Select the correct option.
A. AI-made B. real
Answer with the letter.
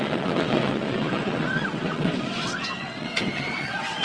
A